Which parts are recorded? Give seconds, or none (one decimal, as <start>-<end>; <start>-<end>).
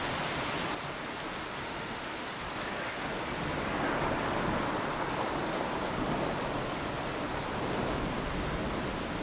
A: 0.0-1.6; 2.2-9.2